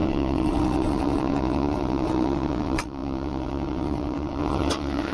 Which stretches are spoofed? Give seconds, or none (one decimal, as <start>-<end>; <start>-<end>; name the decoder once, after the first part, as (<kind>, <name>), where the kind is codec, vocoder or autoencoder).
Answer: 0.0-5.1 (vocoder, WaveNeXt)